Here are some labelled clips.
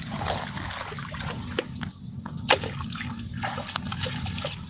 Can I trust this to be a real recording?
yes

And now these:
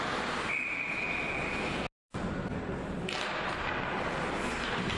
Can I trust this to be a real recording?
yes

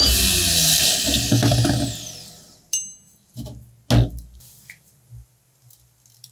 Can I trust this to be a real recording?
yes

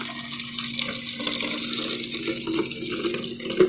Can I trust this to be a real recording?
yes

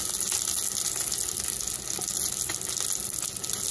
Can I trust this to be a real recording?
yes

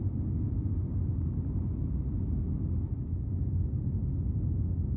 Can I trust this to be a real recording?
yes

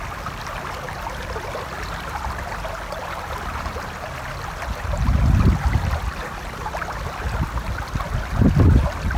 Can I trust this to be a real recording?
yes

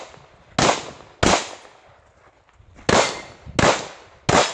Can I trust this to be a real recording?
yes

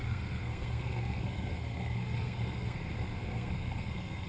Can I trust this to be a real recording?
no